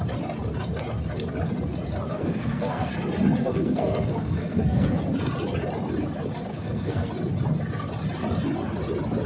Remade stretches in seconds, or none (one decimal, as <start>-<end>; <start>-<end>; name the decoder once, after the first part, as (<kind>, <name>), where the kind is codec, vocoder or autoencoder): 2.1-2.9 (codec, SNAC); 3.4-5.0; 6.5-7.1